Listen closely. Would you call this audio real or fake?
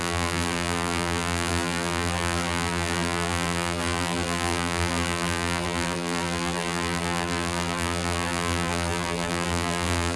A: fake